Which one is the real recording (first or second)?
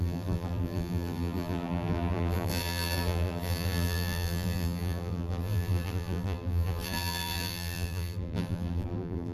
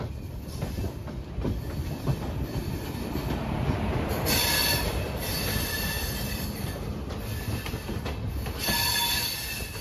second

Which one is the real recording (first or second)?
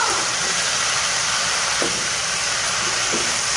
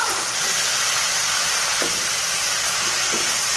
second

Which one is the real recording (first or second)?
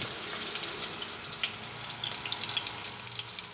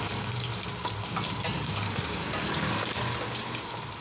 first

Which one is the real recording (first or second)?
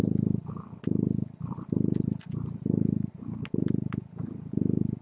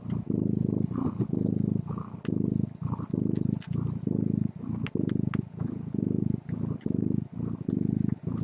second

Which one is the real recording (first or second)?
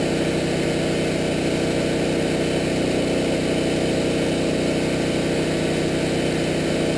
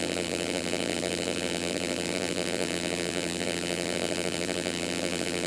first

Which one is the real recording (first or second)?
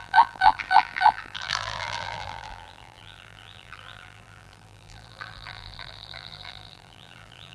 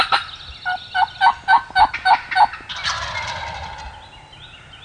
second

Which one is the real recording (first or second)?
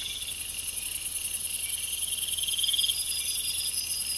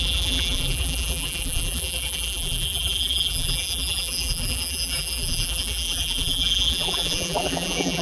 first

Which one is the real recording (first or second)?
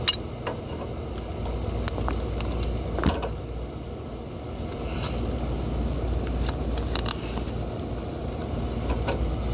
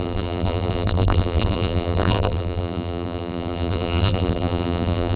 first